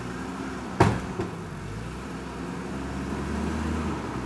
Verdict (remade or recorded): recorded